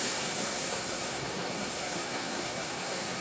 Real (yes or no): no